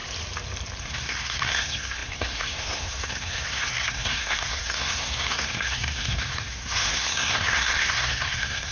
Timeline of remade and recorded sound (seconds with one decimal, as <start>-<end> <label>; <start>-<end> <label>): 0.0-0.8 recorded; 0.8-8.7 remade